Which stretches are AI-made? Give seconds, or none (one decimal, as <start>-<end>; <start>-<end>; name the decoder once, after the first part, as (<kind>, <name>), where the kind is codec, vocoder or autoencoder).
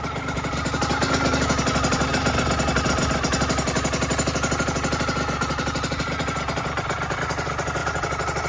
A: none